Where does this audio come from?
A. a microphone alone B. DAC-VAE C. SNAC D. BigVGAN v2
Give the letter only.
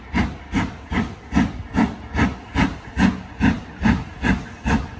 A